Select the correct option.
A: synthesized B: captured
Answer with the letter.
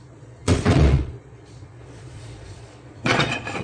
A